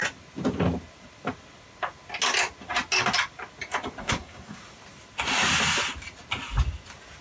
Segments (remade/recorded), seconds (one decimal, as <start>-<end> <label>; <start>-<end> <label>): 0.0-4.0 recorded; 4.0-4.6 remade; 4.6-7.2 recorded